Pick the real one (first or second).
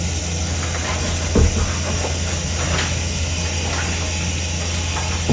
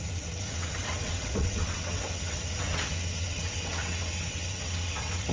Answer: first